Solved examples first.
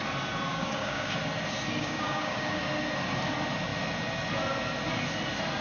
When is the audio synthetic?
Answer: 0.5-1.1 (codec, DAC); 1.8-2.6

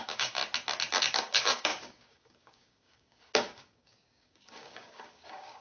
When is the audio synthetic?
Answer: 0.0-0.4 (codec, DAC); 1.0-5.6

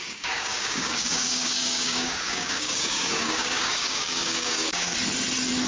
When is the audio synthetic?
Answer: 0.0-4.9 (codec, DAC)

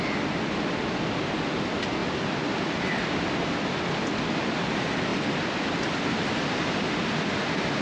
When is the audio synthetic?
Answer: none